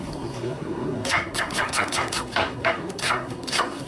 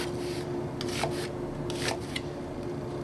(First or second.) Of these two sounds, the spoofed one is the first